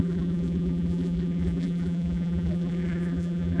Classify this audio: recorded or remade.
remade